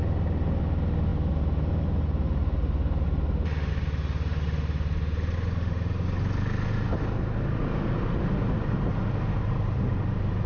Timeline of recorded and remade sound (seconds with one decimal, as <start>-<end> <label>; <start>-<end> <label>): 0.0-10.5 recorded